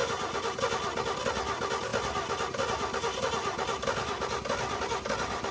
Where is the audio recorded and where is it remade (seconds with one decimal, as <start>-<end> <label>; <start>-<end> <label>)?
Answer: 0.0-5.5 recorded